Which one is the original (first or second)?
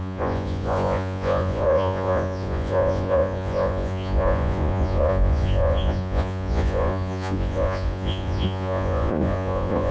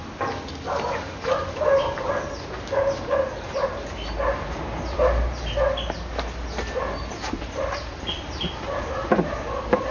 second